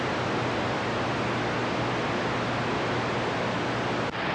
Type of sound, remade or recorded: recorded